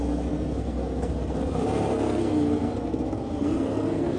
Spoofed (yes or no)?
yes